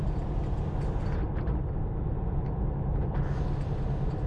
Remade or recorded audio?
recorded